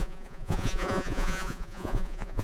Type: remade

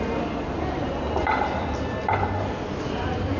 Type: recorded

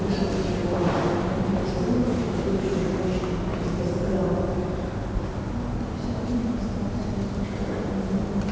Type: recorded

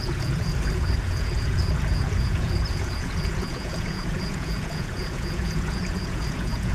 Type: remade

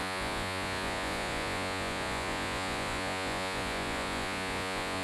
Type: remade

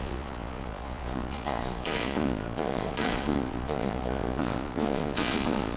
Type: remade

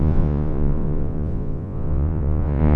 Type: remade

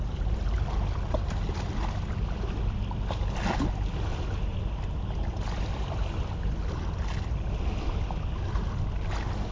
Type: recorded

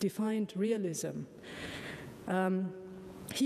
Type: remade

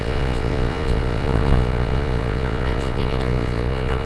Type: remade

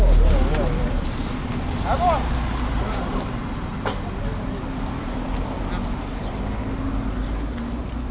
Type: recorded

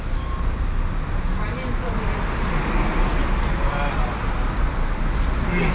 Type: recorded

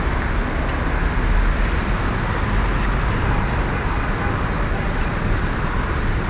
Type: recorded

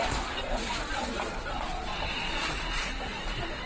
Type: remade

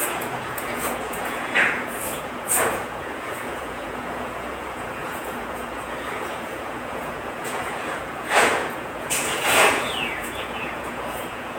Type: remade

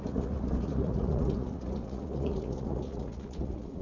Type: remade